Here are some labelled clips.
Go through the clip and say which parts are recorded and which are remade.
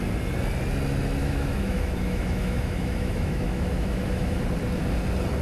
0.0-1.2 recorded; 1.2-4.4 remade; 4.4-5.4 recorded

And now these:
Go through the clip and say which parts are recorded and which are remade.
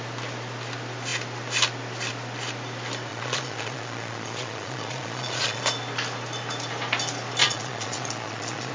0.0-3.1 recorded; 3.1-5.6 remade; 5.6-7.4 recorded; 7.4-8.7 remade